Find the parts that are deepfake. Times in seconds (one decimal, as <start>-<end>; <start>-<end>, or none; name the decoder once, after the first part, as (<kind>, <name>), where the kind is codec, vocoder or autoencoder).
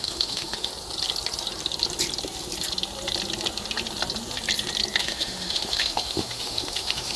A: 0.0-0.7 (autoencoder, DAC-VAE); 5.0-7.2